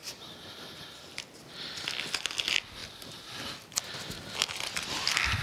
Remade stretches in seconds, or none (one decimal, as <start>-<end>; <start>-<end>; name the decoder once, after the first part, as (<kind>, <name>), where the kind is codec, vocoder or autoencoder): none